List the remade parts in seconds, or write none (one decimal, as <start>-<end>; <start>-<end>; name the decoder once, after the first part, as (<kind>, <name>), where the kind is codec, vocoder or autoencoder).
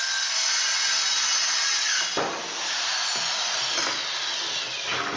none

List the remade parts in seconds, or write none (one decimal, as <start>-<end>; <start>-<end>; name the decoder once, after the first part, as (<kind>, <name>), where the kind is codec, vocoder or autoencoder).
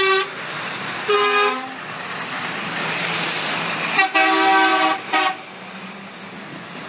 2.8-3.6 (vocoder, BigVGAN v2); 4.7-5.7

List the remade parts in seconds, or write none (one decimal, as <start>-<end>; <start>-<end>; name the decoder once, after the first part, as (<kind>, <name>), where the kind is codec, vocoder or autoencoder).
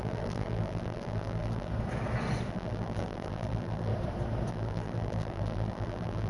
0.0-1.7 (vocoder, BigVGAN v2); 2.5-3.9; 4.5-6.3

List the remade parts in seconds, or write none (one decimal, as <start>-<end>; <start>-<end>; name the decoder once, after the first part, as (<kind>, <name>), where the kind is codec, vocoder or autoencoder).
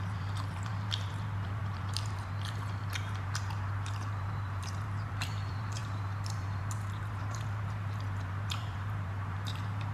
0.0-9.9 (vocoder, BigVGAN v2)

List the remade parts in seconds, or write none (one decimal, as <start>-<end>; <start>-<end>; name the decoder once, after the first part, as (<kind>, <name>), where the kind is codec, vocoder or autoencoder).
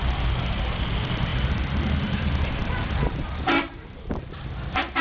2.6-4.3 (vocoder, BigVGAN v2)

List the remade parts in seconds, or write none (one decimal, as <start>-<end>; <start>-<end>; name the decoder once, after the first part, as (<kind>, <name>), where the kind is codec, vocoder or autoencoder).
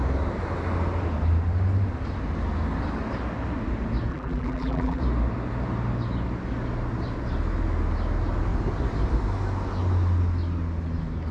4.1-5.0 (vocoder, BigVGAN v2)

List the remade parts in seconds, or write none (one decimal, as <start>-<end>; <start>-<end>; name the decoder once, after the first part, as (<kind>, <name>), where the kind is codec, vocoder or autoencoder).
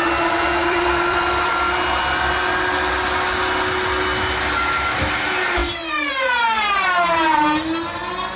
0.6-1.5 (vocoder, BigVGAN v2)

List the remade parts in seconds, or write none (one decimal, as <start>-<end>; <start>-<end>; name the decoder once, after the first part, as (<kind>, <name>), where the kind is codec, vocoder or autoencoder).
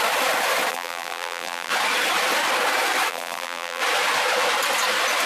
0.7-1.7 (vocoder, BigVGAN v2); 3.1-3.8